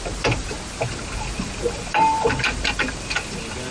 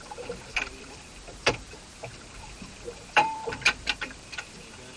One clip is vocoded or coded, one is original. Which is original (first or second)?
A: first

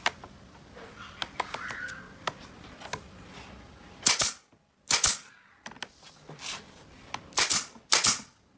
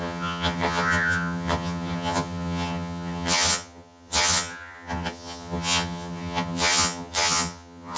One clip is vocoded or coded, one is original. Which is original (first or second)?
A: first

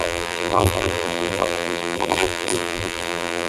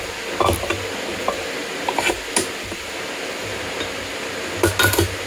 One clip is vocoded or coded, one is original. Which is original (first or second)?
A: second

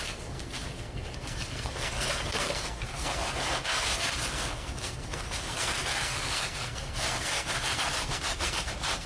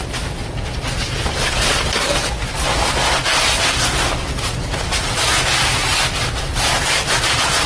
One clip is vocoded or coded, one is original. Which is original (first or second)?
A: second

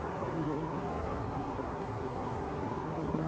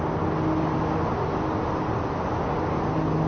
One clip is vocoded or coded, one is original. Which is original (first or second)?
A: second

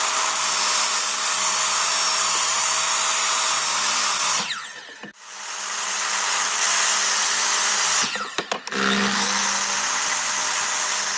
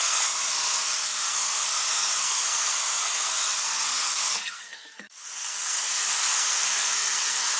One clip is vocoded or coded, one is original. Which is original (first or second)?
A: first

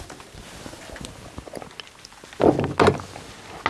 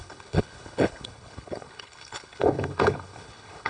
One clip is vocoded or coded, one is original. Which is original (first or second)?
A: first